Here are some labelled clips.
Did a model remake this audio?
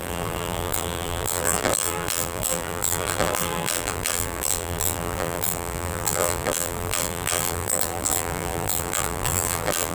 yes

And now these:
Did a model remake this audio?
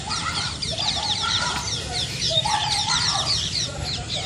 yes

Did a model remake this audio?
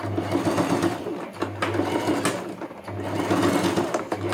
no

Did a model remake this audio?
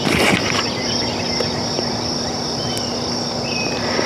no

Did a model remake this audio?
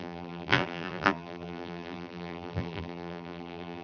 yes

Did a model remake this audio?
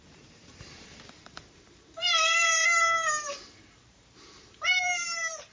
yes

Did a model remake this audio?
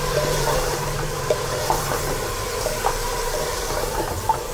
yes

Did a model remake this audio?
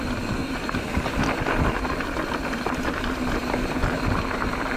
yes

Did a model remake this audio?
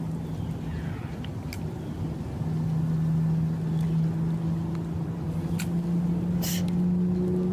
no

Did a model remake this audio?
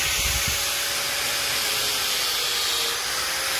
no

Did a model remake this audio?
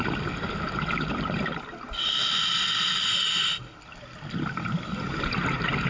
no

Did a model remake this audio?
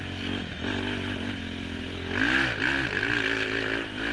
no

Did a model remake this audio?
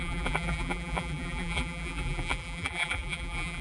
yes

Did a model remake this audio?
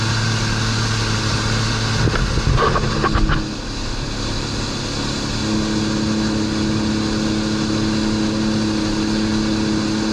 no